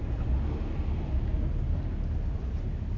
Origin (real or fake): real